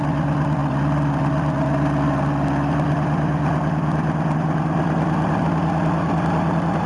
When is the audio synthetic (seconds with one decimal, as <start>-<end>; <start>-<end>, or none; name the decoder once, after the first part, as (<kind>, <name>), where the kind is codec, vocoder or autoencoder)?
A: none